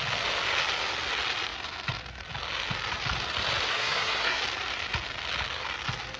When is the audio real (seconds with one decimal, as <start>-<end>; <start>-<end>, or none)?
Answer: 0.0-3.7; 4.4-6.2